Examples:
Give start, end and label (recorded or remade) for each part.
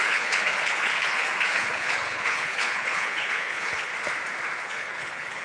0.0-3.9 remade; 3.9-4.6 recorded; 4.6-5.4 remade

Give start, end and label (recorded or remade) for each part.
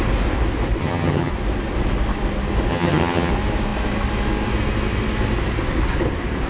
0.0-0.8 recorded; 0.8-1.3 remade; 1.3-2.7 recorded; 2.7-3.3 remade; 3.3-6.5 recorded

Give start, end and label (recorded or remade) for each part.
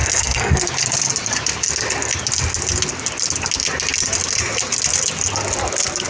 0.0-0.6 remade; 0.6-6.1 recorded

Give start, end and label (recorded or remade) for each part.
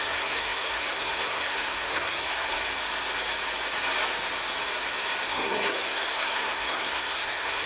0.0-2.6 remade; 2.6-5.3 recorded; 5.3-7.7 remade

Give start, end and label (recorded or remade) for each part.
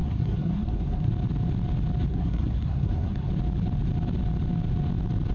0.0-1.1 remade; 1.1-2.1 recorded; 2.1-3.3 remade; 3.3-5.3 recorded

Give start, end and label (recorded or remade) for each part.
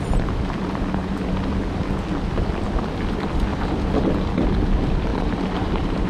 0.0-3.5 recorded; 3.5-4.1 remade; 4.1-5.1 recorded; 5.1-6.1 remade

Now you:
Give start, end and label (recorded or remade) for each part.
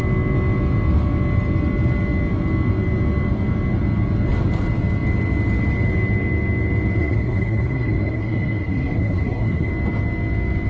0.0-7.0 recorded; 7.0-9.7 remade; 9.7-10.7 recorded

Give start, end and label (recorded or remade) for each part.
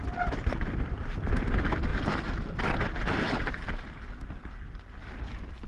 0.0-0.4 recorded; 0.4-1.0 remade; 1.0-5.7 recorded